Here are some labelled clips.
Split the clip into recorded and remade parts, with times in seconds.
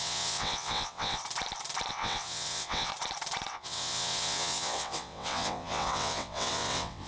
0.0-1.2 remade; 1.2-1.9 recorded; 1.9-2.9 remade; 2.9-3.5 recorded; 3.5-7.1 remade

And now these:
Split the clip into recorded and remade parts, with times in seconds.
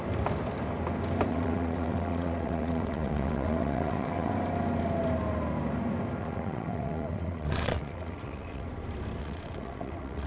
0.0-1.3 recorded; 1.3-4.3 remade; 4.3-6.2 recorded; 6.2-8.7 remade; 8.7-9.2 recorded; 9.2-10.3 remade